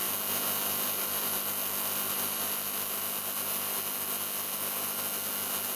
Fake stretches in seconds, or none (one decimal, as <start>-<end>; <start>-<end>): none

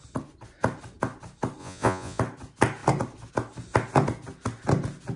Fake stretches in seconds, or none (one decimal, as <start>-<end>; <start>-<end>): 1.6-2.2

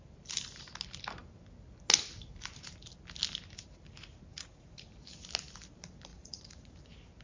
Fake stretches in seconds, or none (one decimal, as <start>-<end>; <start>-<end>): 4.3-4.9; 6.1-6.7

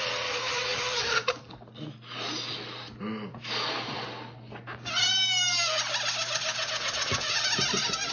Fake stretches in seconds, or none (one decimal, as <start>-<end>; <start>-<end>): 6.5-7.4

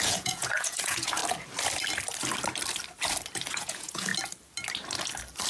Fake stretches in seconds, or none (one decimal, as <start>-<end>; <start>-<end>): 0.0-1.2; 3.5-4.1

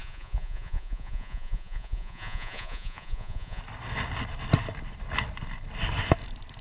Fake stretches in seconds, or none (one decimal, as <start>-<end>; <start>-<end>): 0.0-3.6